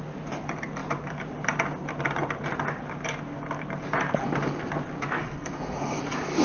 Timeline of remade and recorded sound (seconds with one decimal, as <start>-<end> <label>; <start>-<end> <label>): 0.0-5.2 recorded; 5.2-6.0 remade; 6.0-6.4 recorded